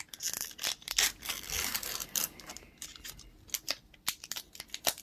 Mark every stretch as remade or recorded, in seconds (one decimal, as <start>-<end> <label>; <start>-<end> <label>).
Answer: 0.0-5.0 recorded